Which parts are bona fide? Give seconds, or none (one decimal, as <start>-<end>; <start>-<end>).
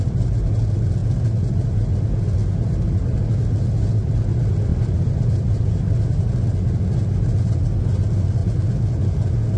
0.0-4.7; 6.3-9.6